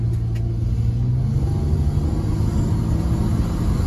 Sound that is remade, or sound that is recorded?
recorded